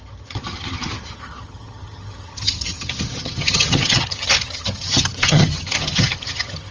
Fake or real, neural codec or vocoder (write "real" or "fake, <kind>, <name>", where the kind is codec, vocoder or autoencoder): fake, vocoder, HiFi-GAN